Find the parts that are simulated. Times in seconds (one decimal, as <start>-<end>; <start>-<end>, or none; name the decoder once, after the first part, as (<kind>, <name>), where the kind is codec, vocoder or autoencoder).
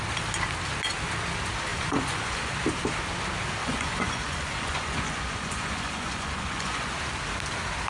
1.7-2.5 (vocoder, Vocos); 3.6-6.9